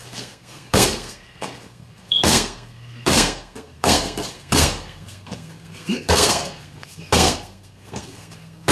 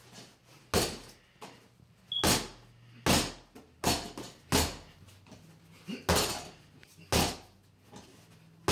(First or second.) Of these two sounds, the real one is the second